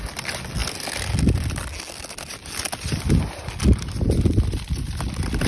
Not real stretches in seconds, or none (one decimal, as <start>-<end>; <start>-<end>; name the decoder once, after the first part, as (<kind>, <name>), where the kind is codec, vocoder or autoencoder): none